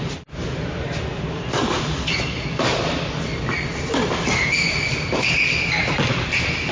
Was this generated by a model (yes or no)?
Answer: yes